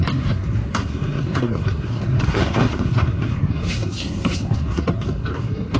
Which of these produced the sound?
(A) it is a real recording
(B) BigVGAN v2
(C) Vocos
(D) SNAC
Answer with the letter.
D